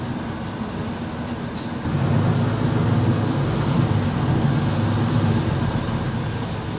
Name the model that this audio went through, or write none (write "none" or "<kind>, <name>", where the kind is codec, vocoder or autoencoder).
none